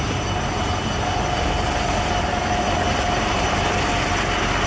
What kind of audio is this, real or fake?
real